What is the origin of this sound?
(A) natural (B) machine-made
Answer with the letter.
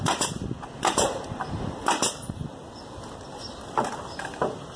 A